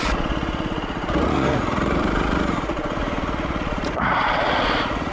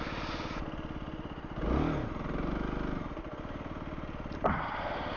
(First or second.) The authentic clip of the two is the second